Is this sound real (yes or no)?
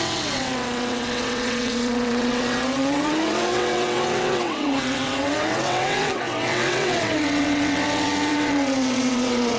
no